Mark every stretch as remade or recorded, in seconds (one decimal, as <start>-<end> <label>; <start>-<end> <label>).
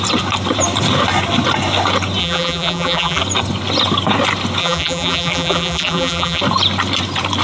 0.0-2.2 recorded; 2.2-3.2 remade; 3.2-4.6 recorded; 4.6-6.4 remade; 6.4-7.4 recorded